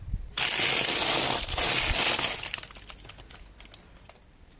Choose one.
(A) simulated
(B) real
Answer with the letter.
B